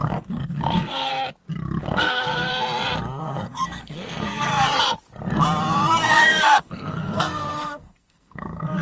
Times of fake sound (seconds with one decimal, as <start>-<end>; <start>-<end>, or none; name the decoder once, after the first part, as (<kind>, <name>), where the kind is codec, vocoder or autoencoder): 0.0-1.1 (codec, SNAC); 1.8-2.5; 3.2-4.5; 6.2-8.8